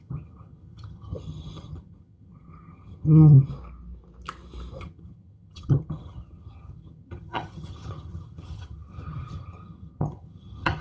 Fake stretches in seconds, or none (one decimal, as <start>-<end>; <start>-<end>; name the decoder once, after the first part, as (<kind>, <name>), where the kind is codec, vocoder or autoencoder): 0.0-3.5 (vocoder, HiFi-GAN); 4.8-10.8